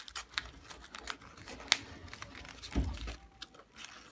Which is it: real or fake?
real